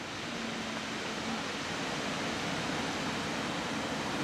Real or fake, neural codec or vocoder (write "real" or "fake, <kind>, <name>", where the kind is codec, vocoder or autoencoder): real